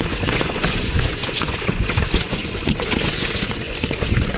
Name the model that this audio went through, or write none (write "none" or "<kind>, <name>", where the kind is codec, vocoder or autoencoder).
vocoder, Vocos